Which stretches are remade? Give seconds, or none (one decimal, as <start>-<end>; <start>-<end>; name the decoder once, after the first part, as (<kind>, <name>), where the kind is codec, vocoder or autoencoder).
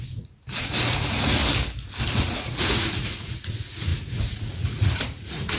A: 0.0-1.4 (vocoder, Vocos); 2.1-5.6